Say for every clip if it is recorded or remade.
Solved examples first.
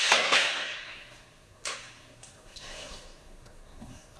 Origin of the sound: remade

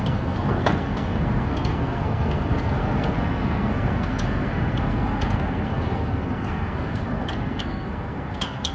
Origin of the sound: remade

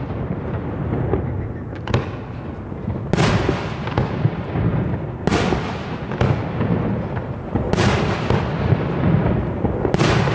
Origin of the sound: recorded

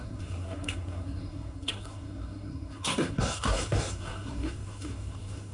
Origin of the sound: remade